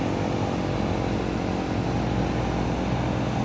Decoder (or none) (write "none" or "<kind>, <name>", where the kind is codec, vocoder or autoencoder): none